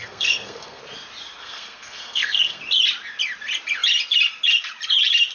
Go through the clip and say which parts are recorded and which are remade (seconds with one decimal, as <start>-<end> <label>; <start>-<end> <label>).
0.0-0.8 remade; 0.8-1.4 recorded; 1.4-2.6 remade; 2.6-5.3 recorded